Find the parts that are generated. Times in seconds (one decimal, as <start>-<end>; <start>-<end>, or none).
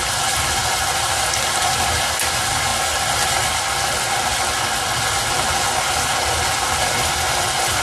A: none